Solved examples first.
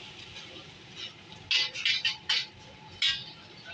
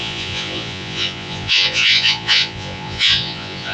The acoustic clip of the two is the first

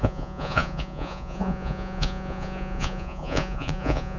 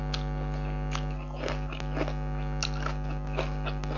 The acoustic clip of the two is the second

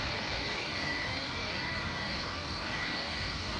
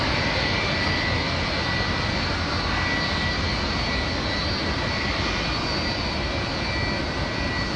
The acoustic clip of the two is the second